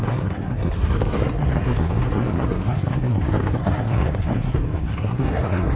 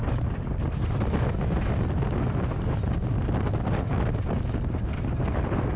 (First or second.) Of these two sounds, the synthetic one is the first